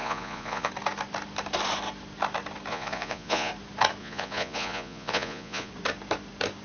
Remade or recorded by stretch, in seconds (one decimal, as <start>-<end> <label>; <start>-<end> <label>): 0.0-0.7 remade; 0.7-2.7 recorded; 2.7-3.5 remade; 3.5-4.0 recorded; 4.0-5.7 remade; 5.7-6.6 recorded